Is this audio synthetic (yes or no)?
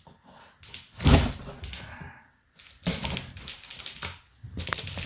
no